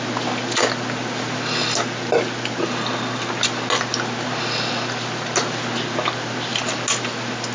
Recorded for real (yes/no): yes